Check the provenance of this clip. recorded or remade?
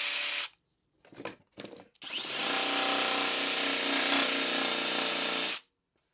recorded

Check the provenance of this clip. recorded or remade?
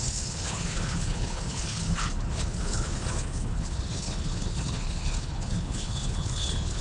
remade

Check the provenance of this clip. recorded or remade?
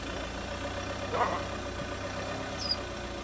recorded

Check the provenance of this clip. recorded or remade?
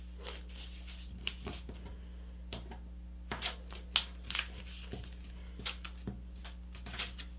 recorded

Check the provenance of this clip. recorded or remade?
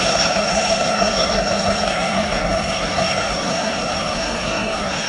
remade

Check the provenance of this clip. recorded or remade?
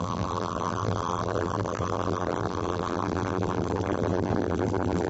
remade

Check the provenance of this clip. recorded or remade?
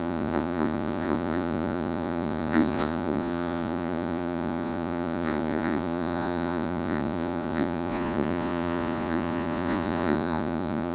remade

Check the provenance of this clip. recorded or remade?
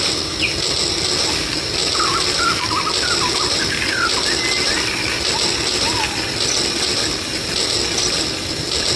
recorded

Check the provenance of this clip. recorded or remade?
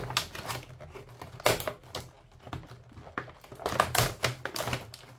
recorded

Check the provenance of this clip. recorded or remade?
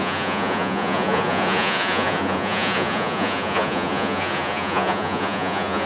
remade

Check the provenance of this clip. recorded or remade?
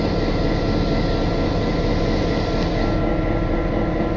recorded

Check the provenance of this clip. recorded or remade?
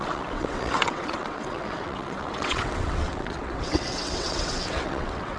remade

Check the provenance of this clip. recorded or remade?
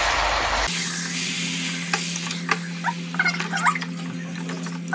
recorded